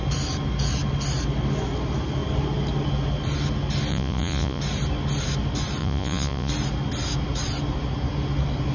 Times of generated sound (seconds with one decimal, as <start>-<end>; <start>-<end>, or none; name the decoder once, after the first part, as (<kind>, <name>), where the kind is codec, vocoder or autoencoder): 3.9-4.6 (vocoder, Vocos); 5.8-6.5